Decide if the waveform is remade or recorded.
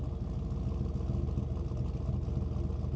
recorded